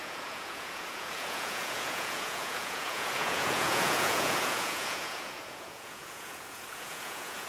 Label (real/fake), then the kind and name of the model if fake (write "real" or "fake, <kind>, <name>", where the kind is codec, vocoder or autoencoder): fake, vocoder, Vocos